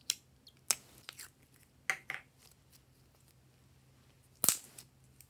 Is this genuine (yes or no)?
yes